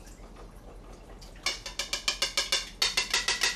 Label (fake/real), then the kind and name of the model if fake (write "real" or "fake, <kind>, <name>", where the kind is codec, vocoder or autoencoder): real